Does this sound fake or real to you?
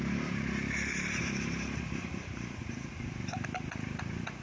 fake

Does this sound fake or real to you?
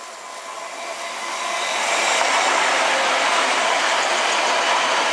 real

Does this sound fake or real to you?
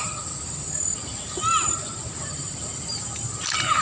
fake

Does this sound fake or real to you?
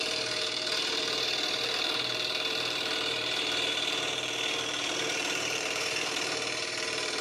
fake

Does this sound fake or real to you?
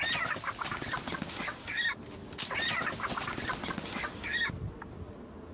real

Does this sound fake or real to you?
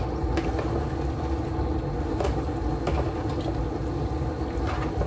real